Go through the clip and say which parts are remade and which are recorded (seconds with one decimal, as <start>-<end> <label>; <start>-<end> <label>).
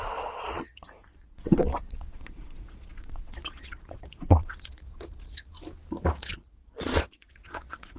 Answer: 0.0-5.5 remade; 5.5-6.1 recorded; 6.1-8.0 remade